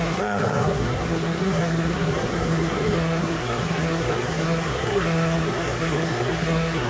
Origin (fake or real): fake